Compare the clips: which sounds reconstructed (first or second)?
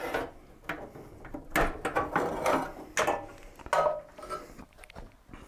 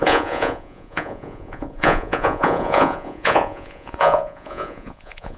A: second